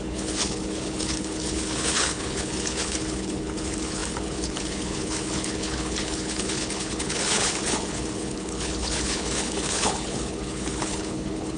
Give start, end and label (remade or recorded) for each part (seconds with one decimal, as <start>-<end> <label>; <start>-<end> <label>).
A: 0.0-11.6 remade